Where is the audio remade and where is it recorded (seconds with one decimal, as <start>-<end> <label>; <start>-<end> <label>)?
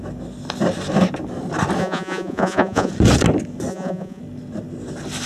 0.0-1.8 recorded; 1.8-2.9 remade; 2.9-3.7 recorded; 3.7-4.2 remade; 4.2-5.3 recorded